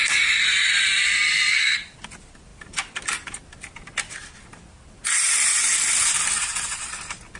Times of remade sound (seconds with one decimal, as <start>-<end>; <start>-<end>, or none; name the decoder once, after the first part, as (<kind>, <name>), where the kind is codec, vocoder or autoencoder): none